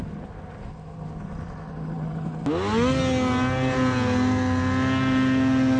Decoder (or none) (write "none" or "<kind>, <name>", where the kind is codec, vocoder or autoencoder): none